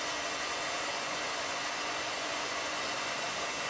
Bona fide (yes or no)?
no